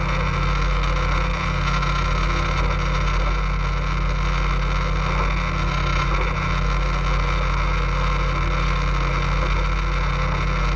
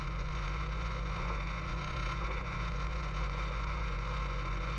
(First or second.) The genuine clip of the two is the first